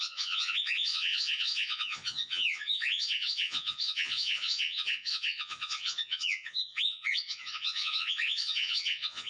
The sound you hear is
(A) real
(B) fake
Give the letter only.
B